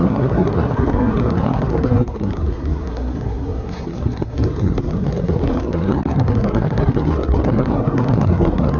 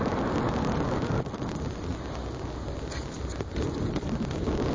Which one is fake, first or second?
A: first